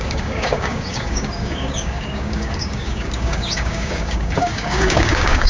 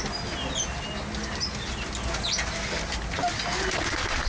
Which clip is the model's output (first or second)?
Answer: first